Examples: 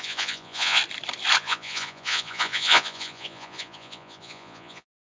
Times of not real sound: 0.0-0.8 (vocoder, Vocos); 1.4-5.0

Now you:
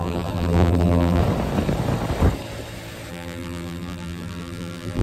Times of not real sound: 0.0-1.2 (vocoder, BigVGAN v2); 3.1-5.0